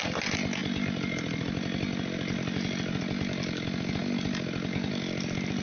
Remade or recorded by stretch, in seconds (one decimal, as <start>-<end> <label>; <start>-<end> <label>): 0.0-5.6 recorded